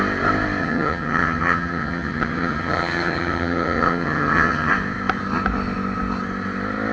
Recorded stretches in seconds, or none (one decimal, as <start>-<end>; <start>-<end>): 0.0-0.6; 4.7-6.9